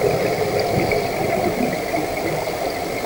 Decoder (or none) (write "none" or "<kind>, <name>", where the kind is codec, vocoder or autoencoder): none